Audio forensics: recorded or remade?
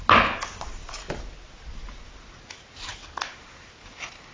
recorded